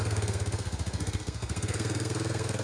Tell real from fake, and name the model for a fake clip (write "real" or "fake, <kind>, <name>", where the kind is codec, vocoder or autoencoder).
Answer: fake, codec, SNAC